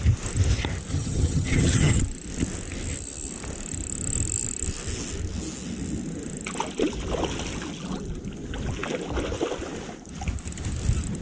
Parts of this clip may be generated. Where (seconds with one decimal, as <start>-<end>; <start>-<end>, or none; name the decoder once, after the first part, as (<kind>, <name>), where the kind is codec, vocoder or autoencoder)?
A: 0.9-2.0 (vocoder, HiFi-GAN)